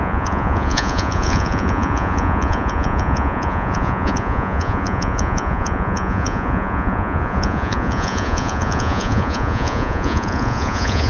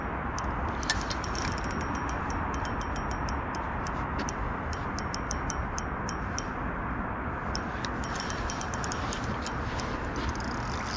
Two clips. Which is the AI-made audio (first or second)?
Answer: first